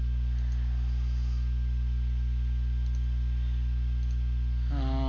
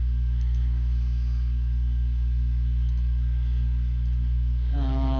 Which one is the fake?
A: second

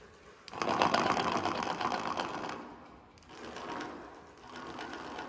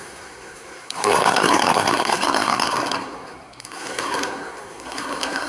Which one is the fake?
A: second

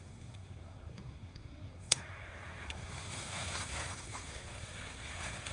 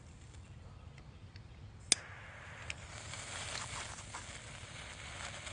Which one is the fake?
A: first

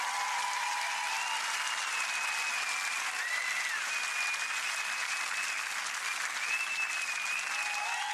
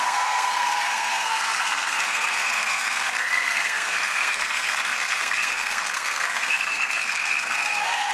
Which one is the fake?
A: second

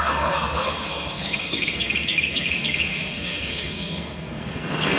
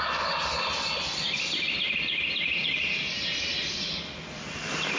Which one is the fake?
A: first